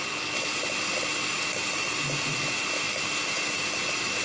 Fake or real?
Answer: real